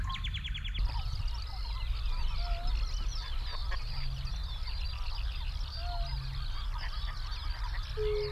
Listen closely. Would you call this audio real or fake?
real